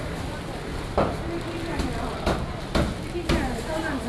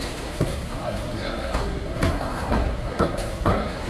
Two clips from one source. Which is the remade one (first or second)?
second